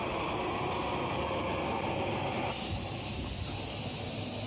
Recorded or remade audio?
remade